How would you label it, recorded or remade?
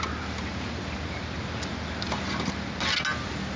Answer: recorded